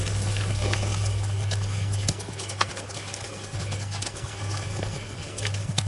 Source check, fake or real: fake